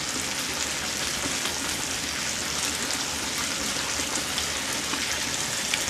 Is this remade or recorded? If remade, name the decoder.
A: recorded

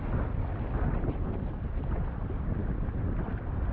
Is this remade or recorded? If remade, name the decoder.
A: recorded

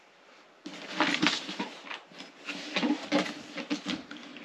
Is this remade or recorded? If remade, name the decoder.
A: recorded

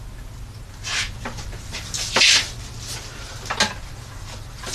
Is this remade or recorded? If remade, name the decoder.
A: recorded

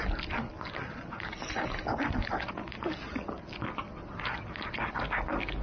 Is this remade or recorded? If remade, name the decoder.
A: recorded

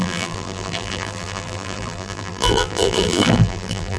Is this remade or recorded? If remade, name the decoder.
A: remade, vocoder, BigVGAN v2